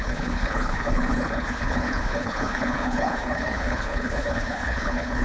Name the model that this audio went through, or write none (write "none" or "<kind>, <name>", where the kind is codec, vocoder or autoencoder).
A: codec, HILCodec